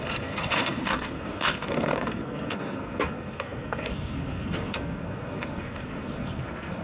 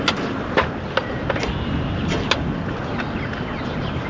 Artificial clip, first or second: first